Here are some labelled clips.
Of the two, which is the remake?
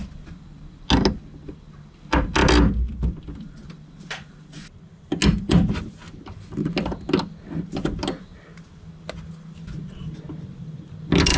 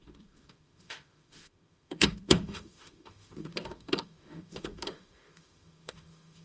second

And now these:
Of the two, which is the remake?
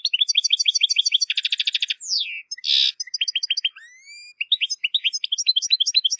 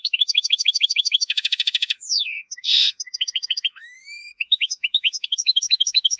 second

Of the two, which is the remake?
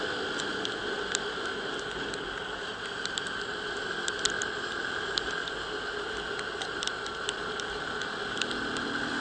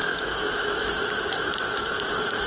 second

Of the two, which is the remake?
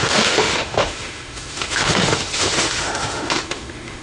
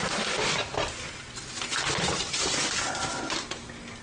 first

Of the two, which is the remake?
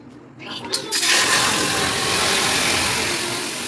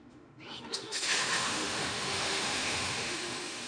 second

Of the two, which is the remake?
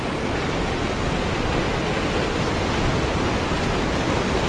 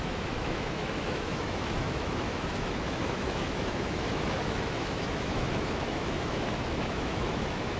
second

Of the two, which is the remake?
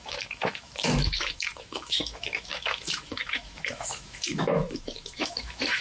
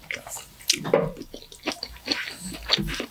first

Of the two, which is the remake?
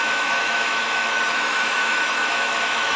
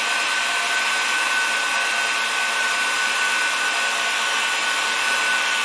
first